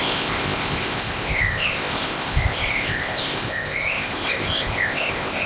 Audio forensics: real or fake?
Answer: fake